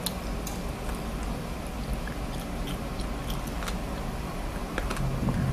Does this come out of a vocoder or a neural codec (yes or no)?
no